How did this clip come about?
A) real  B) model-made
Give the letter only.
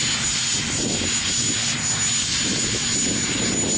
A